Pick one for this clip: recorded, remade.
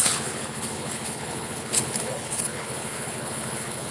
remade